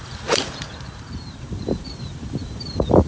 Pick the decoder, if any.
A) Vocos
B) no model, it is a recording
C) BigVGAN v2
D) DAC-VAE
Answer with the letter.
C